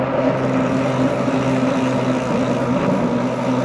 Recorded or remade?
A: recorded